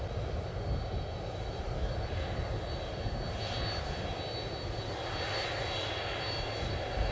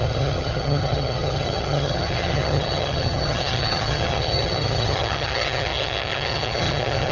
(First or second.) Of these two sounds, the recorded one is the first